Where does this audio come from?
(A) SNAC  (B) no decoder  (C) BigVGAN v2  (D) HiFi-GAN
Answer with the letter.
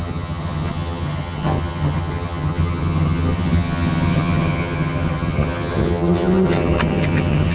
D